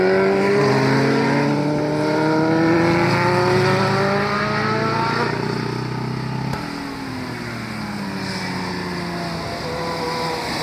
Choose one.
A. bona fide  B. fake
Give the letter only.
A